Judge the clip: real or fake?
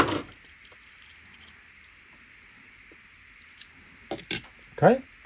real